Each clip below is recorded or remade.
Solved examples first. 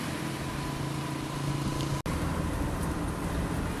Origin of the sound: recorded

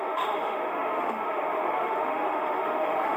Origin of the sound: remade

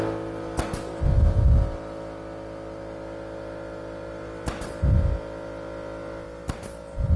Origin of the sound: recorded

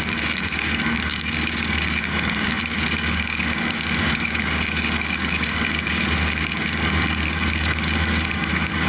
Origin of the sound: remade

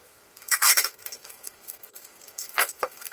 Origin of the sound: remade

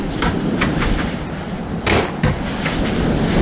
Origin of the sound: recorded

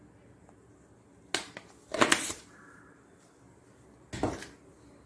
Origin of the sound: recorded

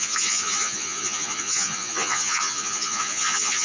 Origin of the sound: remade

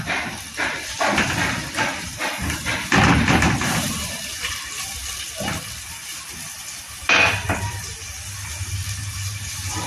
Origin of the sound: remade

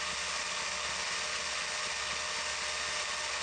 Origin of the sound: recorded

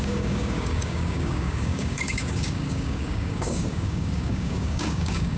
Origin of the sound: remade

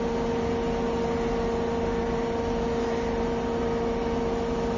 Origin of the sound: recorded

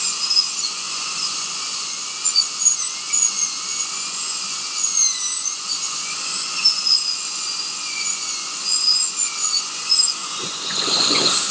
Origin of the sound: remade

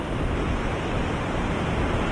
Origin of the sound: recorded